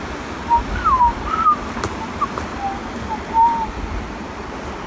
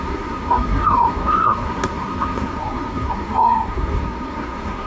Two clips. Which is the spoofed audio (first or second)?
second